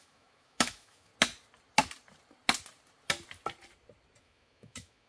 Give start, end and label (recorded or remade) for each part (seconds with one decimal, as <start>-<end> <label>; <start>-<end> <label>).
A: 0.0-1.1 remade; 1.1-4.2 recorded; 4.2-5.1 remade